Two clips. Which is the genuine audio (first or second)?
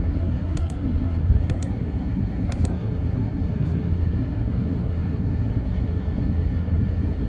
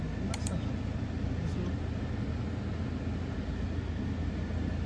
second